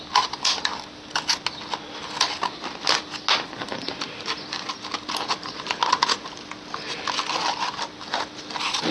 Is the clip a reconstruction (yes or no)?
no